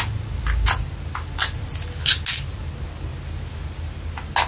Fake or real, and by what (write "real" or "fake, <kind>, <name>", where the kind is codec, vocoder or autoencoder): real